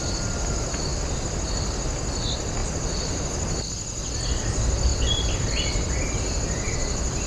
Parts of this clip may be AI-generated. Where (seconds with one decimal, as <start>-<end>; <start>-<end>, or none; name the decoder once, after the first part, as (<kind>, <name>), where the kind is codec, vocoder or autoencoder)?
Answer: 0.9-1.5 (vocoder, BigVGAN v2); 2.6-3.7; 4.9-6.7